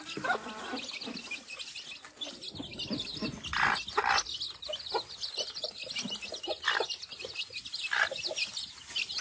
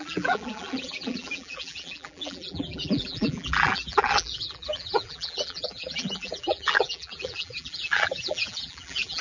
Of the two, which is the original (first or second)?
first